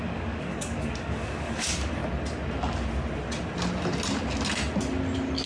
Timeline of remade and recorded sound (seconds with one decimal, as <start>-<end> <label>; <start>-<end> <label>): 0.0-2.0 remade; 2.0-5.5 recorded